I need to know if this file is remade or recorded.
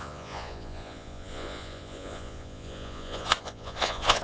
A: remade